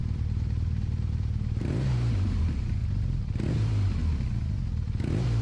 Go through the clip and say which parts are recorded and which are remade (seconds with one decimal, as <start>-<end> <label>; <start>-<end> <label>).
0.0-2.8 remade; 2.8-3.5 recorded; 3.5-4.0 remade; 4.0-5.4 recorded